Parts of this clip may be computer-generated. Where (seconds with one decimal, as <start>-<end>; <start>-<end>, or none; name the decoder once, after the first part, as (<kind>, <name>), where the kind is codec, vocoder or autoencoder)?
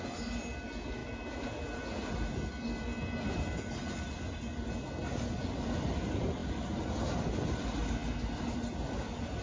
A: none